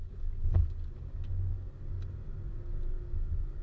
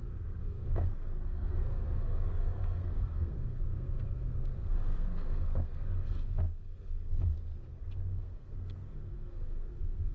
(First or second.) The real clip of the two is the first